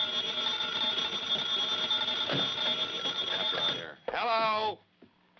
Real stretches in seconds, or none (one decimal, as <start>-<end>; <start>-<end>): 0.0-5.4